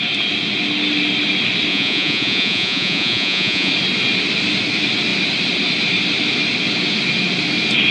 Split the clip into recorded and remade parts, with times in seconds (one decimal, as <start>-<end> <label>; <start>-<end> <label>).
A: 0.0-1.7 recorded; 1.7-3.7 remade; 3.7-7.9 recorded